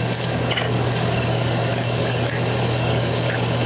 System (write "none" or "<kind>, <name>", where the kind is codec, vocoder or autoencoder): codec, DAC